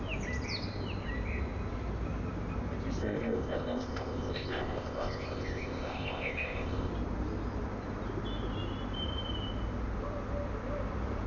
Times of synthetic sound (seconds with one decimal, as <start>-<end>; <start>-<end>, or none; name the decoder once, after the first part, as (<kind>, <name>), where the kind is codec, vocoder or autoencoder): 3.0-6.9 (codec, ZipCodec)